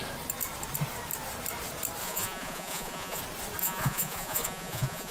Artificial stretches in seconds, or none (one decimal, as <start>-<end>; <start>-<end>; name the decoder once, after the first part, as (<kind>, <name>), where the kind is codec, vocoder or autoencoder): 2.0-3.2 (vocoder, Vocos); 3.6-5.1